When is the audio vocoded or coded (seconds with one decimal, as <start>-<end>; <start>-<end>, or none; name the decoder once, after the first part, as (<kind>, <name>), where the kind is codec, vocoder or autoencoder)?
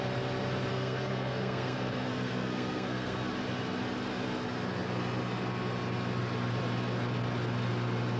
0.7-3.3 (codec, SNAC)